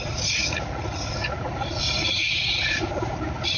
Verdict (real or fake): fake